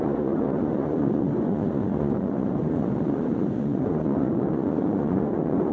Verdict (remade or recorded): remade